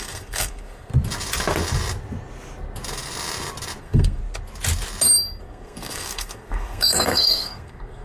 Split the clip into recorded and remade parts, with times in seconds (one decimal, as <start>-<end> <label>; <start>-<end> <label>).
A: 0.0-0.9 remade; 0.9-3.8 recorded; 3.8-4.2 remade; 4.2-5.4 recorded; 5.4-8.0 remade